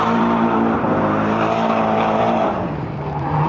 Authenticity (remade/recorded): remade